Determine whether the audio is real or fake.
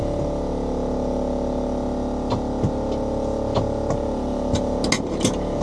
real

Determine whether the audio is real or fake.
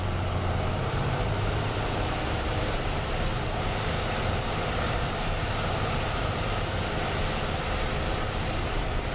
fake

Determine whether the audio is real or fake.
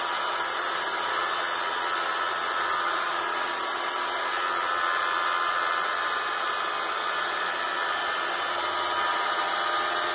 real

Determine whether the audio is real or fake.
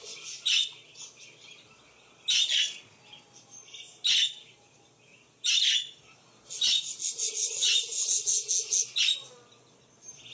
real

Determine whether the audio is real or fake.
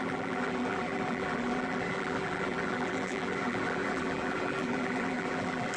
fake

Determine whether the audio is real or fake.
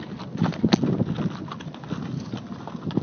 real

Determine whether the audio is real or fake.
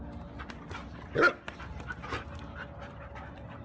real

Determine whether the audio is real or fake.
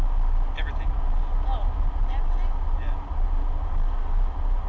real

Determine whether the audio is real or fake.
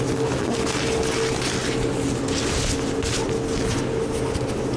real